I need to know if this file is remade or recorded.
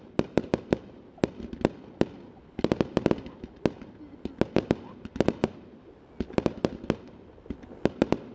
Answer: recorded